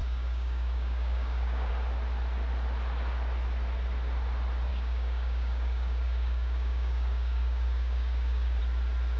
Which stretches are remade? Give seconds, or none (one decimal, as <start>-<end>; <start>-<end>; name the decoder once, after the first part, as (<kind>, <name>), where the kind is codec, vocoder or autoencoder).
0.0-1.7 (codec, DAC); 4.7-8.6